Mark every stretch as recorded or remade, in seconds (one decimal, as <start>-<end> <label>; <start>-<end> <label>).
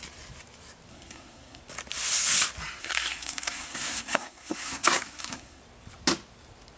0.0-0.9 recorded; 0.9-1.6 remade; 1.6-2.8 recorded; 2.8-5.6 remade; 5.6-6.8 recorded